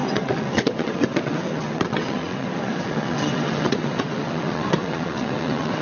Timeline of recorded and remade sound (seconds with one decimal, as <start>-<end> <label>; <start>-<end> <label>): 0.0-5.8 remade